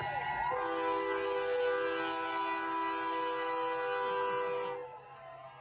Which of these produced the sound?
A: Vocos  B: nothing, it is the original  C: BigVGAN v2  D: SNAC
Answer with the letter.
B